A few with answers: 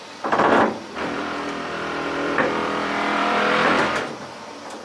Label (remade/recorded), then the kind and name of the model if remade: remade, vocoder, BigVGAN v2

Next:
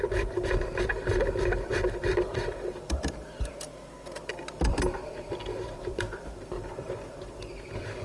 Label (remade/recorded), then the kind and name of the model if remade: remade, vocoder, BigVGAN v2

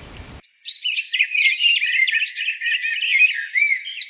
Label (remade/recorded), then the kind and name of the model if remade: remade, vocoder, BigVGAN v2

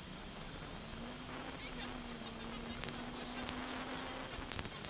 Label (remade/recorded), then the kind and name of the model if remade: recorded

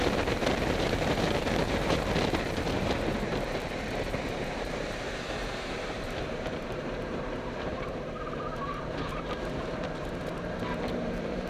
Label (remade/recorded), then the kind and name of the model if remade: remade, vocoder, BigVGAN v2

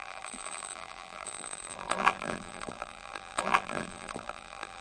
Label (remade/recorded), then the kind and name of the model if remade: remade, vocoder, BigVGAN v2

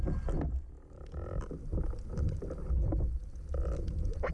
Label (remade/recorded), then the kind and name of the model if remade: recorded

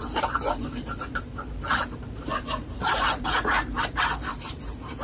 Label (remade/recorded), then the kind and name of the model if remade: remade, vocoder, BigVGAN v2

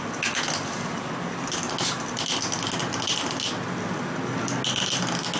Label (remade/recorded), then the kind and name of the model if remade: recorded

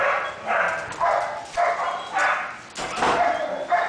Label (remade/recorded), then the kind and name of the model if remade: recorded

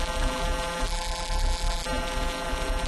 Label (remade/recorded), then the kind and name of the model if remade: remade, vocoder, BigVGAN v2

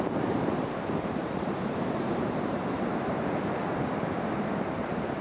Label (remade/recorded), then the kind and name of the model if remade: remade, vocoder, BigVGAN v2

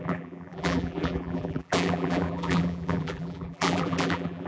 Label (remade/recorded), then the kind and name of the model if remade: remade, vocoder, BigVGAN v2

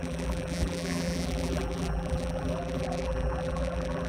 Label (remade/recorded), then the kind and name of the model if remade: remade, vocoder, BigVGAN v2